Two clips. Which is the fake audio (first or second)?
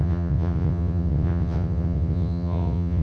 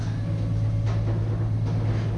first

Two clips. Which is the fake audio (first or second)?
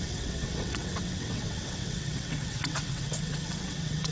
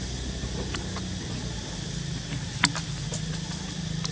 first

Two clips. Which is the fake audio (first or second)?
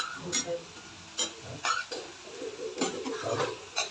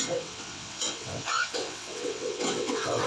second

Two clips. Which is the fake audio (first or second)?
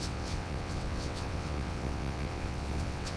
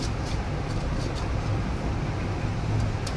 first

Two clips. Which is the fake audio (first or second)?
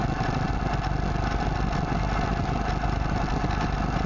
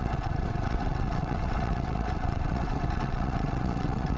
second